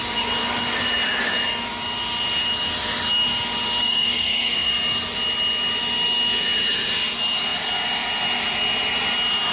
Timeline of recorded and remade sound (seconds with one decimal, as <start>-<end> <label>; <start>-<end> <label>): 0.0-3.8 recorded; 3.8-4.7 remade; 4.7-9.5 recorded